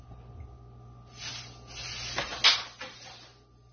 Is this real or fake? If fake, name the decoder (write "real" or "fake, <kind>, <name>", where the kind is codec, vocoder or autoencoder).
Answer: real